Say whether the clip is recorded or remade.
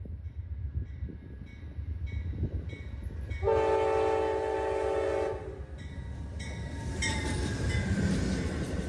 recorded